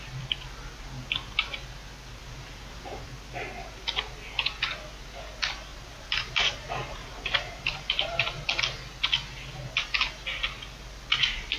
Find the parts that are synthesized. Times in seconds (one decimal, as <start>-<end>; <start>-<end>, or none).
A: 2.2-3.1; 5.7-8.6